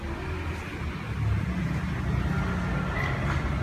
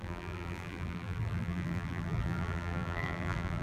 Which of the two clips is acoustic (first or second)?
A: first